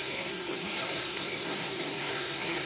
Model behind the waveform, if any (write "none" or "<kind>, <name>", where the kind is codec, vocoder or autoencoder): codec, SNAC